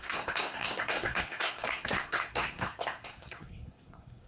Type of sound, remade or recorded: remade